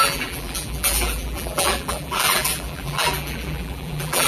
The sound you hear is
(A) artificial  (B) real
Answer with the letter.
A